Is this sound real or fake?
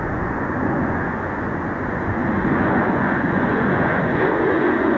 fake